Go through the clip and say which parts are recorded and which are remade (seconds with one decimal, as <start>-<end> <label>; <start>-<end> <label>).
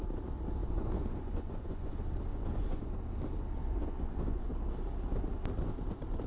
0.0-0.6 recorded; 0.6-1.9 remade; 1.9-2.3 recorded; 2.3-2.9 remade; 2.9-3.6 recorded; 3.6-4.5 remade; 4.5-6.3 recorded